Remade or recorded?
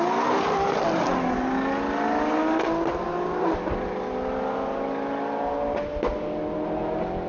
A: recorded